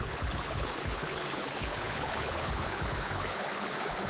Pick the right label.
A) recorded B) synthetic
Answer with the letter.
B